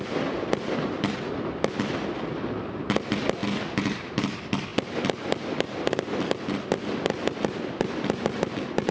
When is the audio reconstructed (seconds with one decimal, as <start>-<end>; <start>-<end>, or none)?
none